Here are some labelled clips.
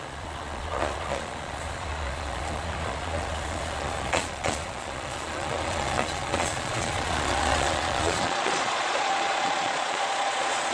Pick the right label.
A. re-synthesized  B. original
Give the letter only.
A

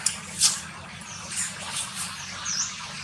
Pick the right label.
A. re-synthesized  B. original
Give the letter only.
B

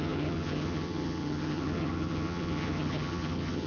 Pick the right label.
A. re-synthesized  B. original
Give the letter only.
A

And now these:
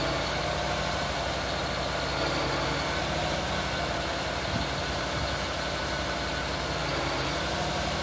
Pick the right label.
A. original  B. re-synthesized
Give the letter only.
A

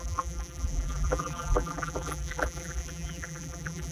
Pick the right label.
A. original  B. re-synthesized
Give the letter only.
B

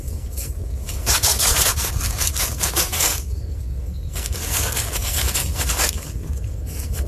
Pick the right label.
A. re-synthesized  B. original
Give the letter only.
A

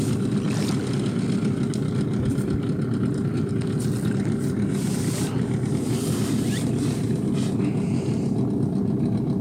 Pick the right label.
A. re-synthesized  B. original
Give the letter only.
B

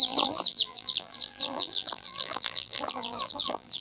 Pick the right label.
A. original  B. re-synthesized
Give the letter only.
B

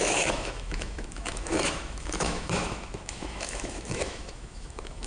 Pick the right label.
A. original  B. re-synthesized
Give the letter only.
B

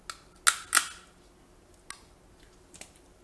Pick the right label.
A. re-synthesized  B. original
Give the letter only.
B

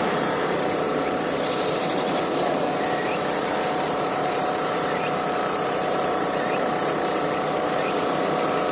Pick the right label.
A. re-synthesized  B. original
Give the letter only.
A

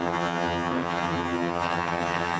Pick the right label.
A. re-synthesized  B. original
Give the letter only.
A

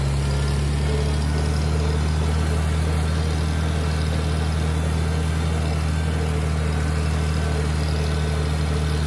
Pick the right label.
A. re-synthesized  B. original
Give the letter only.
B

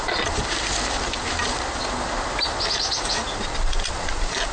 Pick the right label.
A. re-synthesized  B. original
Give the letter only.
B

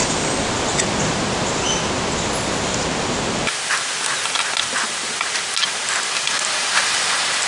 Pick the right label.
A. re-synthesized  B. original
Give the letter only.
B